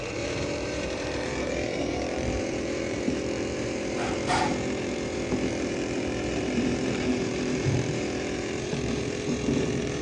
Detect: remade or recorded remade